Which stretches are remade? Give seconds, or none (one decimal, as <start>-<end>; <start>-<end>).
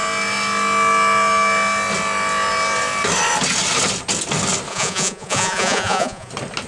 4.7-6.3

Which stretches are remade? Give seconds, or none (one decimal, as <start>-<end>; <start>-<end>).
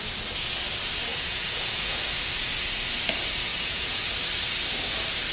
1.1-2.0; 3.5-4.1